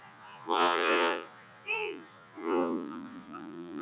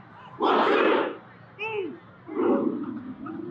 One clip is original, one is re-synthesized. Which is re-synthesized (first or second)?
first